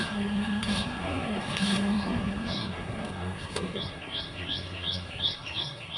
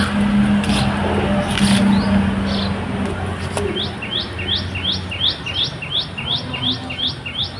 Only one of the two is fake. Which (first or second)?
first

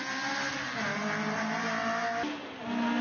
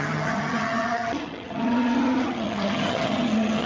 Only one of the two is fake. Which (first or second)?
second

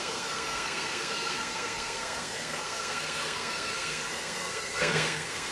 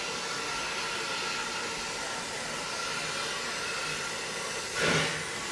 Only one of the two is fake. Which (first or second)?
first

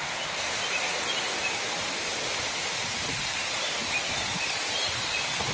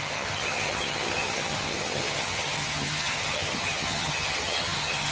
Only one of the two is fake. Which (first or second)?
second